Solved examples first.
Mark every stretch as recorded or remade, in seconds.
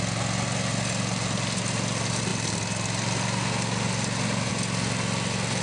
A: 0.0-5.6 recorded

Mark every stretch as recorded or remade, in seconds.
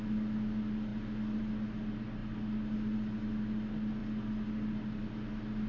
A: 0.0-5.7 recorded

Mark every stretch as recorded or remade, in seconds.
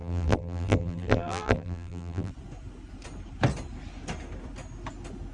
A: 0.0-2.3 remade; 2.3-5.3 recorded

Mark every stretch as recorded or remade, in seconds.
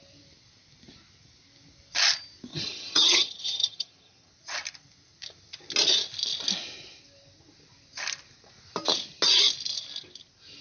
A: 0.0-2.5 recorded; 2.5-4.3 remade; 4.3-10.6 recorded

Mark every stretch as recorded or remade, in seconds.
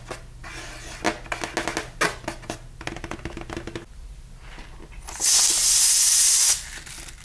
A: 0.0-7.2 recorded